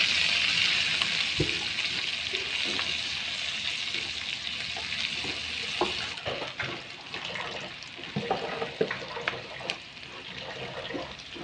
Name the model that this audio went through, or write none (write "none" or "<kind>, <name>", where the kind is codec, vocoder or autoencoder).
none